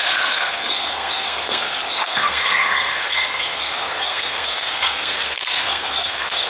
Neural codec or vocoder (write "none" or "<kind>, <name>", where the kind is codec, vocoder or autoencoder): codec, SNAC